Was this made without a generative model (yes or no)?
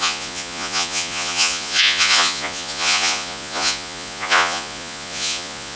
no